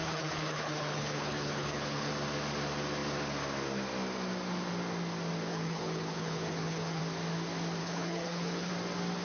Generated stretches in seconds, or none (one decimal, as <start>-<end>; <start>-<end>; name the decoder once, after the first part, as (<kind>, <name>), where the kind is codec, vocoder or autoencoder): 0.0-2.1 (codec, HILCodec); 5.5-7.0; 7.8-8.7